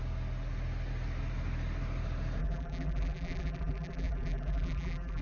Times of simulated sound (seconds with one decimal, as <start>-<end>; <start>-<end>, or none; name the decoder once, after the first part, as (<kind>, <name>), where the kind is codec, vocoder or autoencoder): 2.4-5.2 (vocoder, BigVGAN v2)